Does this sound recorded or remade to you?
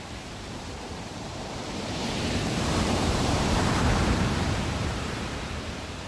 remade